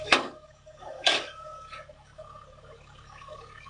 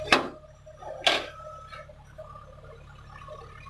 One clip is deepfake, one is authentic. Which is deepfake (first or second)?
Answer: first